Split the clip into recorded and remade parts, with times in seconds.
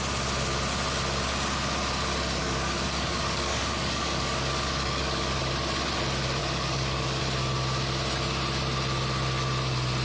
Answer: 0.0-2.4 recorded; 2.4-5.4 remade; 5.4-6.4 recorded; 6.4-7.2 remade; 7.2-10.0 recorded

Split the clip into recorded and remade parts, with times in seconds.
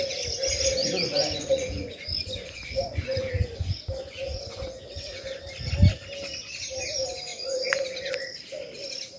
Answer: 0.0-0.8 recorded; 0.8-5.4 remade; 5.4-7.3 recorded; 7.3-8.1 remade; 8.1-9.2 recorded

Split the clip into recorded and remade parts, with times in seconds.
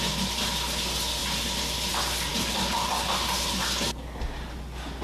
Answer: 0.0-5.0 recorded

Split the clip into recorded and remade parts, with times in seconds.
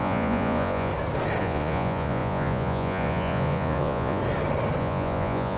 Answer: 0.0-0.9 remade; 0.9-1.4 recorded; 1.4-4.2 remade; 4.2-4.8 recorded; 4.8-5.6 remade